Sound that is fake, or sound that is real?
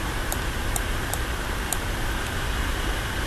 fake